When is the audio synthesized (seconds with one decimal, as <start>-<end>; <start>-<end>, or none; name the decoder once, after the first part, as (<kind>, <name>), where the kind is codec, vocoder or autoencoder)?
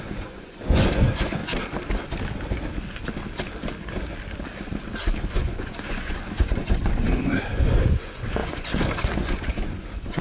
0.0-1.4 (vocoder, Vocos); 5.3-10.2